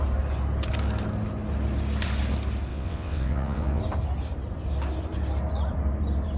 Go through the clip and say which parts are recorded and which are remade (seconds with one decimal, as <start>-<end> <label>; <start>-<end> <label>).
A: 0.0-2.7 recorded; 2.7-3.8 remade; 3.8-6.4 recorded